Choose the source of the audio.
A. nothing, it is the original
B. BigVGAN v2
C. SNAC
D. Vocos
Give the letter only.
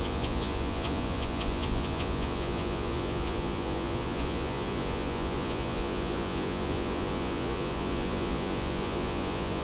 D